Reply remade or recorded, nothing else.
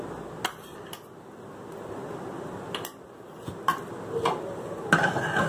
recorded